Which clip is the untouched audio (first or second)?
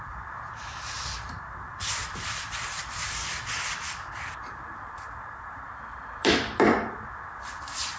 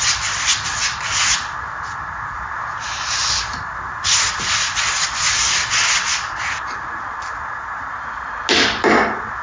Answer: second